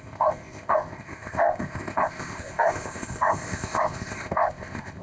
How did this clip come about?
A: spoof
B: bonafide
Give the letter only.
A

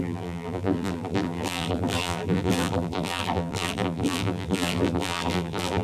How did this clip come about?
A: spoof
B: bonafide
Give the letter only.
A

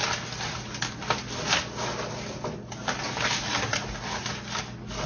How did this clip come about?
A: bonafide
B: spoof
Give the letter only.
A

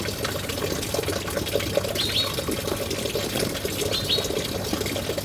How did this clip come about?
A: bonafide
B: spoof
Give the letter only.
A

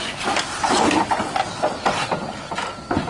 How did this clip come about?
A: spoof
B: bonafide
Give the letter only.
B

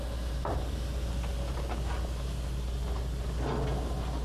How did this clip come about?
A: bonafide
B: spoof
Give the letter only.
A